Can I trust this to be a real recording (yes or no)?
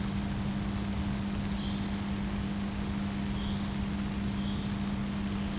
yes